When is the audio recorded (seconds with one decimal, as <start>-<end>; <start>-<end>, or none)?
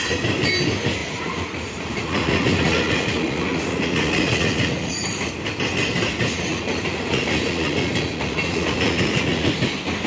0.0-1.0; 5.3-6.3; 9.5-10.1